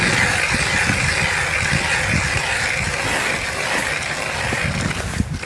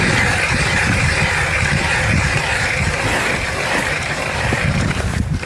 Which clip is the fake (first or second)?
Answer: second